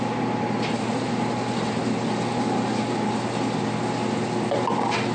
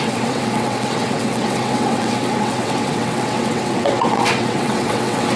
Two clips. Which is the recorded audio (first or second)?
first